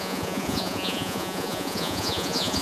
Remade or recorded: remade